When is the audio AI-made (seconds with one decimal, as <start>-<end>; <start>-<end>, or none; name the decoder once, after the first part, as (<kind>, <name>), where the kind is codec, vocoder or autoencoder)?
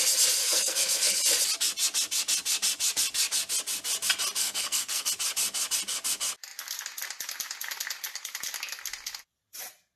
0.4-1.2 (codec, SNAC); 4.4-5.1